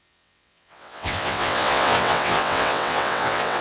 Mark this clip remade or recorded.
remade